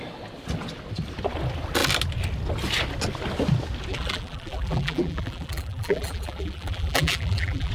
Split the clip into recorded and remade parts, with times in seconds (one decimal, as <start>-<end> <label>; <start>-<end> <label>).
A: 0.0-3.9 recorded; 3.9-7.7 remade